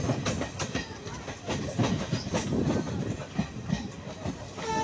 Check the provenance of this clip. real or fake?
real